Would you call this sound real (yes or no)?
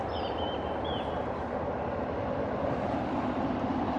yes